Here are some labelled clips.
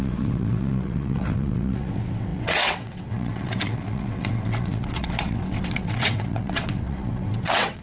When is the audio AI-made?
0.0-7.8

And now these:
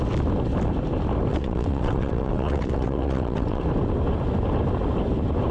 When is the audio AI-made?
1.3-3.6

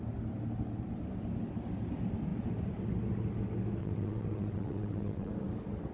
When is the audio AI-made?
3.8-5.3

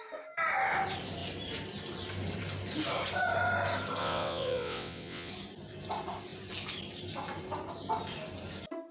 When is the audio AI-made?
4.0-5.3

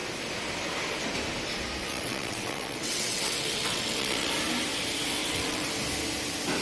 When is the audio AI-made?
1.8-4.3; 5.2-5.7

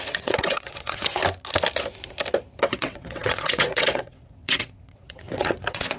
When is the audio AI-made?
0.0-1.2; 2.7-6.0

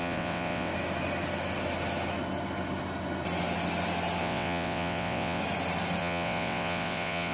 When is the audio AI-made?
0.0-0.7; 4.2-5.4; 6.0-7.3